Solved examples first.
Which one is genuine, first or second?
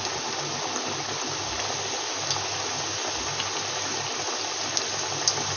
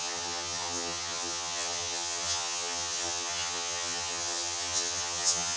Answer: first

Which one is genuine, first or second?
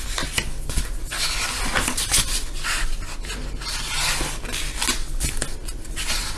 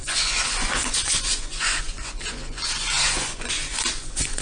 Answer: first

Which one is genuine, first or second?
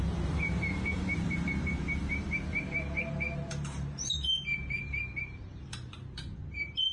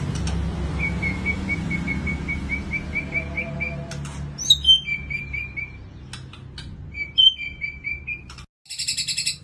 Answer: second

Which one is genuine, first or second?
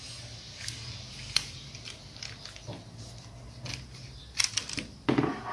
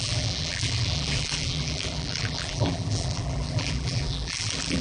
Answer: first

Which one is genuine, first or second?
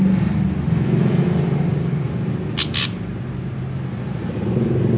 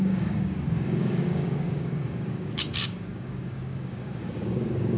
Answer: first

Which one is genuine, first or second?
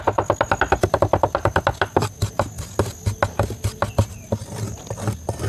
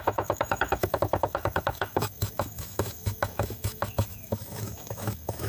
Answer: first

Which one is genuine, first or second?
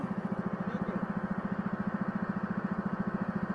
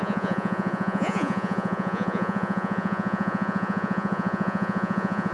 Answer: first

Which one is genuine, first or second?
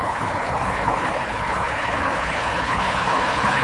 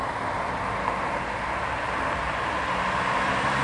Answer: second